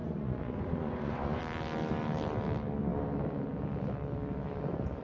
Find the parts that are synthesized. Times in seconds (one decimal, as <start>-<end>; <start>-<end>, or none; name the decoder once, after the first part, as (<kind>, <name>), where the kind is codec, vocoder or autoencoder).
0.0-1.4 (vocoder, Vocos)